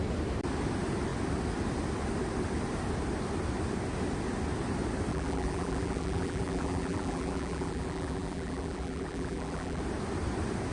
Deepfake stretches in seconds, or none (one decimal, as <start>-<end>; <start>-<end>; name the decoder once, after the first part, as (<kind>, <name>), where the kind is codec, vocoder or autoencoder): 5.1-9.8 (vocoder, BigVGAN v2)